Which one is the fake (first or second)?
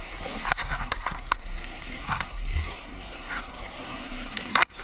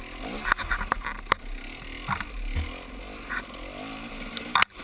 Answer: first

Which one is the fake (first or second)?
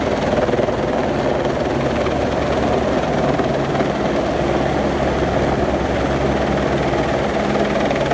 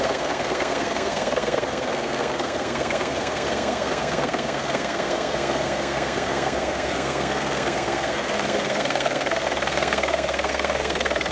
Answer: second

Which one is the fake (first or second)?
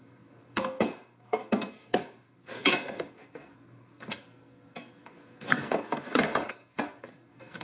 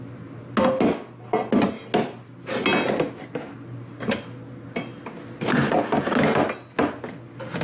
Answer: first